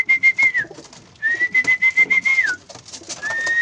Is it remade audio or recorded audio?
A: recorded